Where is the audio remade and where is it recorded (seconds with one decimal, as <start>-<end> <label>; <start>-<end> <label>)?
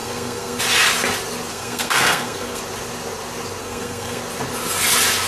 0.0-0.6 remade; 0.6-1.5 recorded; 1.5-2.6 remade; 2.6-3.6 recorded; 3.6-4.2 remade; 4.2-5.3 recorded